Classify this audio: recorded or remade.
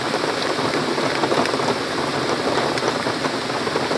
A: recorded